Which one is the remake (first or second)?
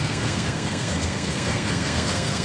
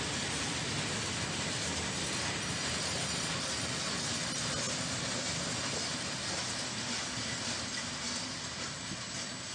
first